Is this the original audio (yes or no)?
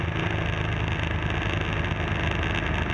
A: yes